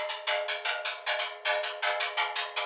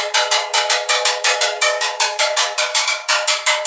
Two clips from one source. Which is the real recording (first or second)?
first